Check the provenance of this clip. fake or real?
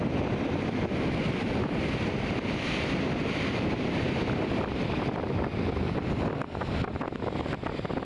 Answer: fake